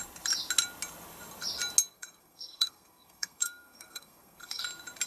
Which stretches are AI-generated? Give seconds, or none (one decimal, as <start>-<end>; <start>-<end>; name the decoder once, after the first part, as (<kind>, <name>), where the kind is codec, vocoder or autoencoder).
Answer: 1.9-4.6 (codec, SNAC)